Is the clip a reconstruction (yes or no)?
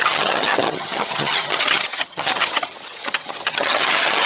yes